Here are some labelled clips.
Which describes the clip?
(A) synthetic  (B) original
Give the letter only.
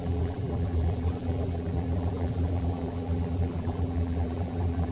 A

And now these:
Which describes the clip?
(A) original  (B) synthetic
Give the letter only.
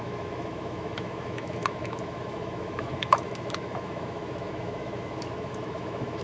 B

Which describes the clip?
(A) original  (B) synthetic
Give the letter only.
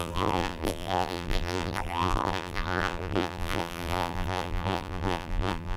B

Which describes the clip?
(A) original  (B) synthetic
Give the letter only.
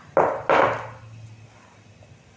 A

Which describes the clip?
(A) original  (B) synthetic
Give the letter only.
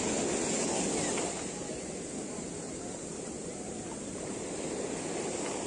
A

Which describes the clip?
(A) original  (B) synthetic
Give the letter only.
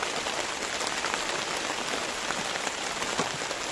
A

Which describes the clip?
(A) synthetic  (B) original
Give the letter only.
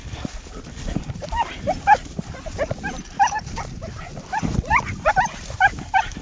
A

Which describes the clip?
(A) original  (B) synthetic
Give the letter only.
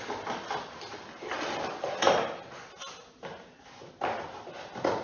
A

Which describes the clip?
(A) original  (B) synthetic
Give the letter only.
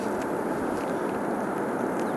A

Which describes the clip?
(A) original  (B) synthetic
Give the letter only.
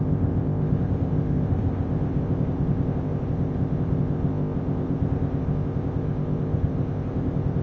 B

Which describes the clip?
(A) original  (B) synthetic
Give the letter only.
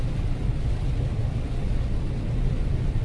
B